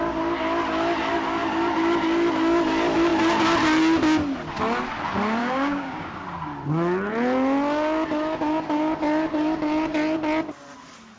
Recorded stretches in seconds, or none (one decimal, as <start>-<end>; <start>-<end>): 0.0-5.4; 6.1-11.2